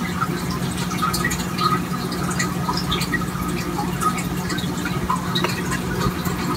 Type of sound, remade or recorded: recorded